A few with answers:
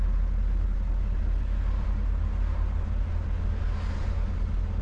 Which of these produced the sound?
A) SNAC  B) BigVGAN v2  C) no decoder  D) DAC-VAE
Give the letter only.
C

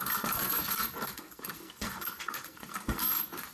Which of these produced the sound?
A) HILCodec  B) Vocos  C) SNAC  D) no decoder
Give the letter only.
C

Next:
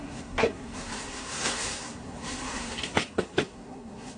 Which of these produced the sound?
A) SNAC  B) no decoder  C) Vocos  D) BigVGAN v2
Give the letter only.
A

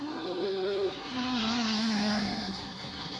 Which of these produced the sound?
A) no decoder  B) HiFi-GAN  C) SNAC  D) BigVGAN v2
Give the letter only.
C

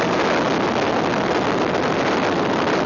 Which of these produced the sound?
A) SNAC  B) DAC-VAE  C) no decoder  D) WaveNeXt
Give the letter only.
C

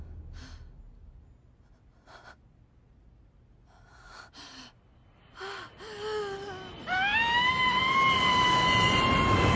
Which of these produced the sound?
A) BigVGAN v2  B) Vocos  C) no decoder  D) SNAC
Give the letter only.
C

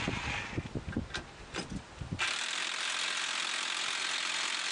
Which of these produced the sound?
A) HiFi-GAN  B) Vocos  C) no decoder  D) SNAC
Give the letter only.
C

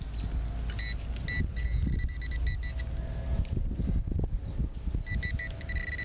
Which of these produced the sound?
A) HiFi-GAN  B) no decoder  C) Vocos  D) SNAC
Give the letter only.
B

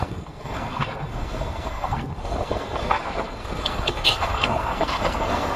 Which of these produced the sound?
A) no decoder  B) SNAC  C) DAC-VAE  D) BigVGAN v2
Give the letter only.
B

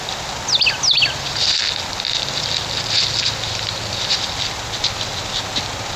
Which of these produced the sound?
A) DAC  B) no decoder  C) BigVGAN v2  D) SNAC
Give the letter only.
B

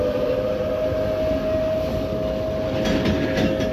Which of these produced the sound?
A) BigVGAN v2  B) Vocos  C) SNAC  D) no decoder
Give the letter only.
D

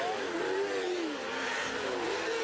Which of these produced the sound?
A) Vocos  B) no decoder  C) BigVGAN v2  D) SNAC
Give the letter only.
B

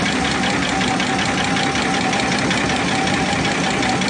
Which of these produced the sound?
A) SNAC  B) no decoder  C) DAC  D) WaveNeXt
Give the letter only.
B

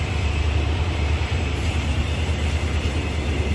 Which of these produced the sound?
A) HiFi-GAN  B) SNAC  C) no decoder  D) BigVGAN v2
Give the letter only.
C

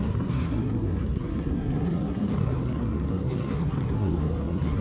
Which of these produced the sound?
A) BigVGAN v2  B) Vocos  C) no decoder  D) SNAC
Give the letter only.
D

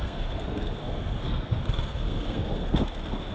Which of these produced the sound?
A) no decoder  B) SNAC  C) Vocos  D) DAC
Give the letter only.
B